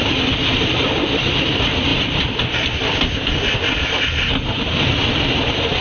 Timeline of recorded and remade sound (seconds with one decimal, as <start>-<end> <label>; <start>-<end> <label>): 0.0-1.9 remade; 1.9-5.8 recorded